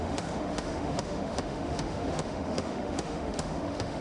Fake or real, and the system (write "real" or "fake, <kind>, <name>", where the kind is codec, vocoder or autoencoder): fake, autoencoder, DAC-VAE